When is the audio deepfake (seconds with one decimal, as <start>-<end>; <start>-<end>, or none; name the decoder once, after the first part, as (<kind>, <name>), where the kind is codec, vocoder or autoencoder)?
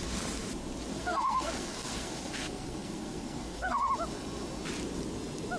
0.9-3.9 (codec, SNAC)